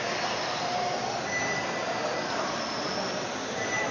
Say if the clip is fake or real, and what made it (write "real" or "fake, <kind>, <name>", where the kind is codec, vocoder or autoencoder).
real